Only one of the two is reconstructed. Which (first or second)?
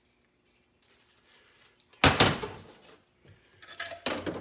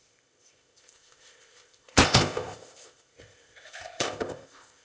second